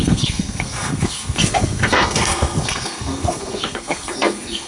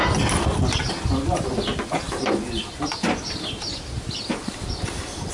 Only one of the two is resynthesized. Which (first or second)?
first